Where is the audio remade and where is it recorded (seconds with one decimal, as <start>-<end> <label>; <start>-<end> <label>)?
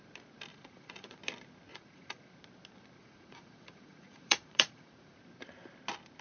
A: 0.0-0.5 recorded; 0.5-1.2 remade; 1.2-1.7 recorded; 1.7-2.3 remade; 2.3-3.0 recorded; 3.0-5.2 remade; 5.2-6.2 recorded